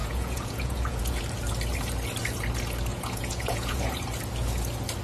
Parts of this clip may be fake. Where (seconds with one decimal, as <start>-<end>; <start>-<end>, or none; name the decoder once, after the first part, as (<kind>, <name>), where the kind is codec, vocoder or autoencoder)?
0.0-1.2 (vocoder, Vocos); 2.9-4.0